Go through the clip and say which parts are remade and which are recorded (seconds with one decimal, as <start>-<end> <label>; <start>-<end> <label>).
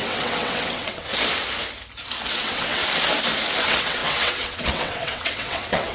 0.0-1.1 remade; 1.1-2.3 recorded; 2.3-2.8 remade; 2.8-3.6 recorded; 3.6-5.9 remade